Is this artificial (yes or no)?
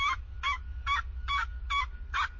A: yes